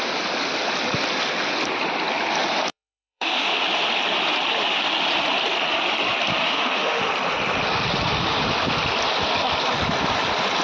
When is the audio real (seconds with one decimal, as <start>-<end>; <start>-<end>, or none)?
0.0-2.7; 3.6-6.4; 7.0-10.6